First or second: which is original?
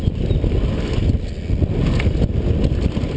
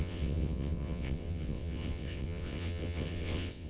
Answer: first